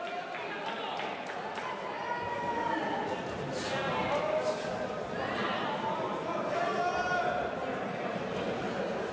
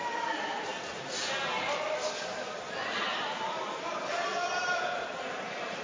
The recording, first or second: first